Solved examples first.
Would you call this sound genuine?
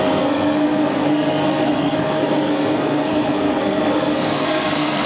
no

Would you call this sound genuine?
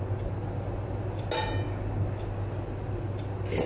yes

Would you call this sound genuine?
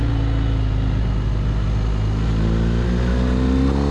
yes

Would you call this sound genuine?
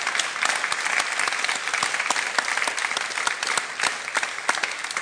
yes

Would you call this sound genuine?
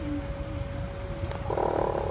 yes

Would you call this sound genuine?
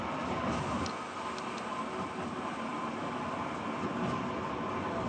yes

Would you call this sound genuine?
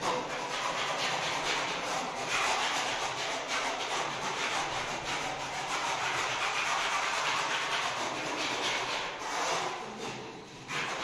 no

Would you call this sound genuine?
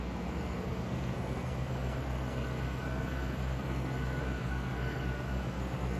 no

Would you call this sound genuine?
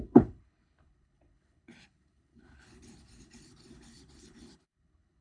no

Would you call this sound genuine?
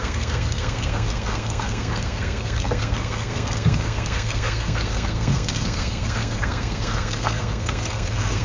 no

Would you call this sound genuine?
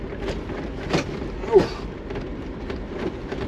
yes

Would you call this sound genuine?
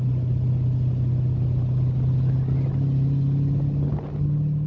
yes